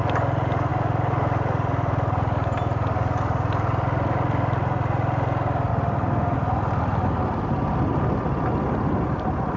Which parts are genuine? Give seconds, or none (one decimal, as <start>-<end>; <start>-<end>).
0.0-9.6